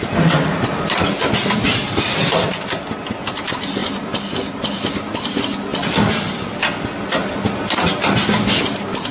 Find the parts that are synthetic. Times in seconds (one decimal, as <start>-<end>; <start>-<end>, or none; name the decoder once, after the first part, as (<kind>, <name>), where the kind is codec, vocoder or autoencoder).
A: none

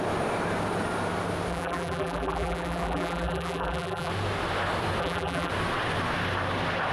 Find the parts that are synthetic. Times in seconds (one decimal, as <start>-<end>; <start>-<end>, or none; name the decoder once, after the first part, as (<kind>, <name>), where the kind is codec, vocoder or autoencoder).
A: 1.5-4.1 (vocoder, BigVGAN v2); 5.0-5.5

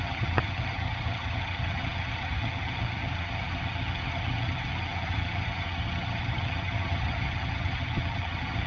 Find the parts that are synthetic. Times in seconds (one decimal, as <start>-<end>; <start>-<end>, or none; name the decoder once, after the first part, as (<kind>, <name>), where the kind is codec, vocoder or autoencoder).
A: 0.0-8.7 (vocoder, HiFi-GAN)

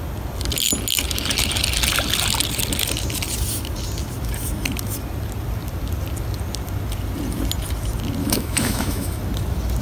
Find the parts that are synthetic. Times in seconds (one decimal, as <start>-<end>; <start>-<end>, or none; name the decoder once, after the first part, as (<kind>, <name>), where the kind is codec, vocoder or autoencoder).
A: 8.2-9.2 (autoencoder, DAC-VAE)

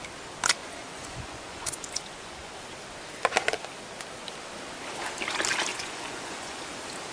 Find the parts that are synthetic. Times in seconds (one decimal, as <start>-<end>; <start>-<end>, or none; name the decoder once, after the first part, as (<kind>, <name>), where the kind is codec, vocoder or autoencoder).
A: 0.6-2.5 (vocoder, Vocos); 5.7-6.6

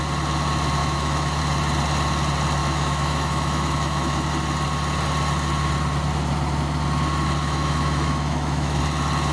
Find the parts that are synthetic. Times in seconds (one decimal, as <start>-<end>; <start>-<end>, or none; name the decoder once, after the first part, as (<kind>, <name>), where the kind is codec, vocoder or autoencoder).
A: 0.8-1.4 (autoencoder, DAC-VAE); 2.6-4.3; 7.4-8.8

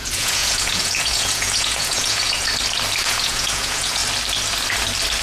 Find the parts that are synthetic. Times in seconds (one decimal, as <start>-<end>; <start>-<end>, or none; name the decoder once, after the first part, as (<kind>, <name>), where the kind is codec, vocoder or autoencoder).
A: 0.0-2.5 (vocoder, Vocos); 3.0-4.0

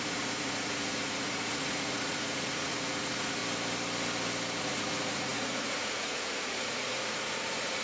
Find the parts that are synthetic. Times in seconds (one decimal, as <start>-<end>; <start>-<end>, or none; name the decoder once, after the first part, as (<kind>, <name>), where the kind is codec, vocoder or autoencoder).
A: 0.0-3.4 (vocoder, Vocos); 4.6-7.8